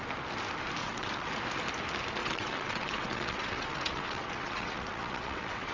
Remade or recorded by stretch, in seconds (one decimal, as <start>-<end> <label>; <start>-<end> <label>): 0.0-0.8 recorded; 0.8-1.3 remade; 1.3-2.2 recorded; 2.2-5.7 remade